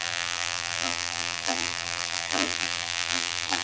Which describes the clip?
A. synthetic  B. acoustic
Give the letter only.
A